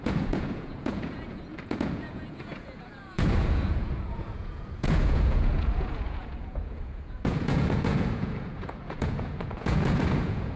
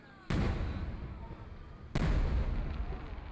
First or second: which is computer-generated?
first